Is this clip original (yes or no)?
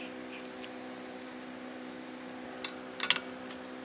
yes